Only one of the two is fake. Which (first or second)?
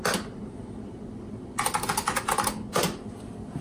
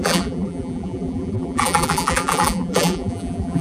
second